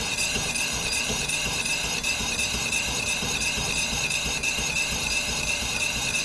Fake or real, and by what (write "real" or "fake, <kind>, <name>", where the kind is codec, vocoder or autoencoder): fake, vocoder, BigVGAN v2